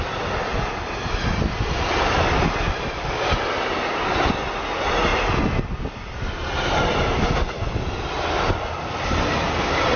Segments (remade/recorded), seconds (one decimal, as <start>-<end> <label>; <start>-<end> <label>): 0.0-10.0 recorded